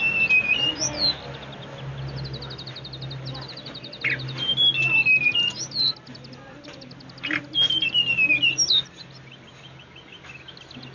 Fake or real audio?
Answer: real